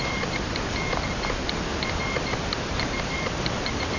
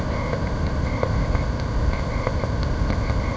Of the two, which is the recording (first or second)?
first